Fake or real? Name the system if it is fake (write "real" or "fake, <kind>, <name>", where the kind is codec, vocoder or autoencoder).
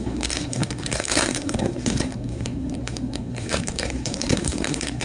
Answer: fake, codec, SNAC